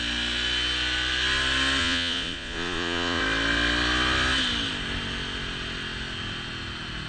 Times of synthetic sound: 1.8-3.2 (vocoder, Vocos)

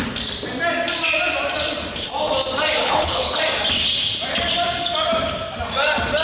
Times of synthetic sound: 2.8-3.4 (codec, HILCodec)

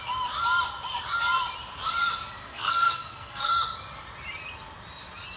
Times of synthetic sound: 2.4-3.5 (codec, SNAC)